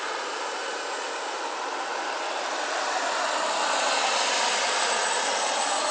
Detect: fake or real real